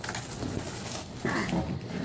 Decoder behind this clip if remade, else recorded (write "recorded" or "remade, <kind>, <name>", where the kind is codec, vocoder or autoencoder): recorded